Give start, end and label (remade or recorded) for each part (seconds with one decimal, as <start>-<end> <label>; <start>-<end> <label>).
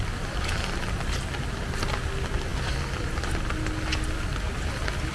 0.0-5.1 recorded